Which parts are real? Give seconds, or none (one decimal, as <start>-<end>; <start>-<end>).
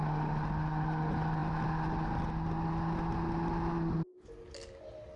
0.0-5.2